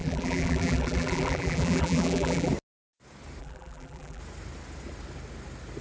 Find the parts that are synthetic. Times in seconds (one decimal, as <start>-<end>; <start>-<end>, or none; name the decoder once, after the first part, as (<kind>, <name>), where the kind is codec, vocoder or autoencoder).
0.0-2.5 (vocoder, BigVGAN v2); 3.4-4.2